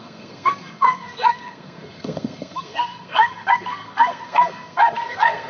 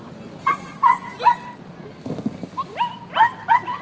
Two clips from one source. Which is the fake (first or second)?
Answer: first